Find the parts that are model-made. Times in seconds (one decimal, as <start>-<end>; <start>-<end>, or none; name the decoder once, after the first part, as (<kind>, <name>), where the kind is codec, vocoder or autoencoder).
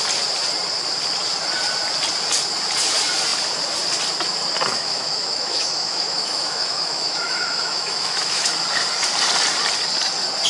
4.7-8.5 (autoencoder, DAC-VAE)